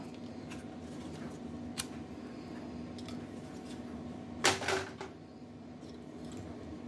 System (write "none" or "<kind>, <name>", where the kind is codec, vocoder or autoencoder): none